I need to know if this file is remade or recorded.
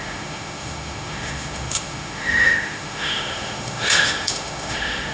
remade